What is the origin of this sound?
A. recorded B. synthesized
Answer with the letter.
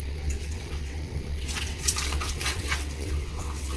B